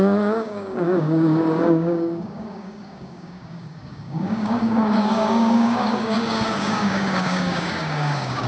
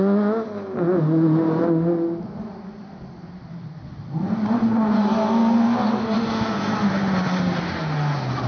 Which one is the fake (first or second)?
first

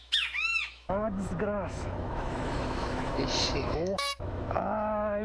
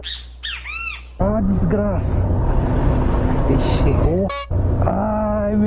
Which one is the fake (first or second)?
first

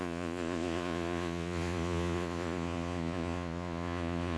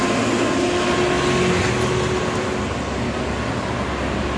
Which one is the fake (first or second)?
first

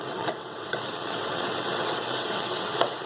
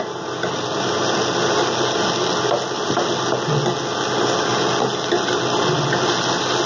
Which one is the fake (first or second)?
first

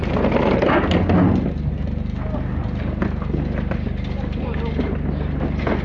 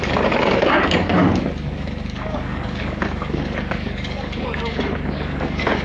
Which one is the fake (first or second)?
second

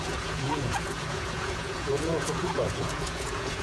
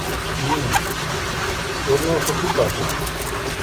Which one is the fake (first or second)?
first